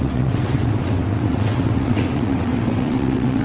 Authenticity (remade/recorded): remade